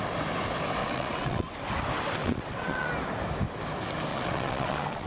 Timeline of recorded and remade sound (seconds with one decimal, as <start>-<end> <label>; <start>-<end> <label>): 0.0-0.8 recorded; 0.8-1.5 remade; 1.5-2.2 recorded; 2.2-2.9 remade; 2.9-4.1 recorded; 4.1-5.1 remade